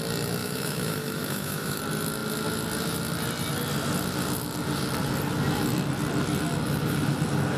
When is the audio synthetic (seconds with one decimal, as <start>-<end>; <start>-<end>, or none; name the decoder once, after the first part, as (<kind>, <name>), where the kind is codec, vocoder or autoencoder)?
0.4-1.8 (autoencoder, DAC-VAE)